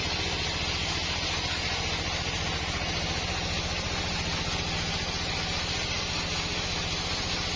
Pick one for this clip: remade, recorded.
recorded